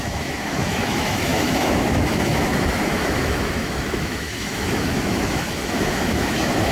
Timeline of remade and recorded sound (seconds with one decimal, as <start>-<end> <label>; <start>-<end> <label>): 0.0-6.7 remade